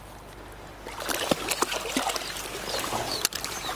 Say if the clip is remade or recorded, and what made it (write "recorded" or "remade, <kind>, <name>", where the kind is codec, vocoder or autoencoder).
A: recorded